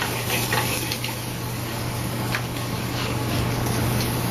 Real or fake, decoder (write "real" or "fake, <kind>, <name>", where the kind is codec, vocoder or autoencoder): fake, codec, DAC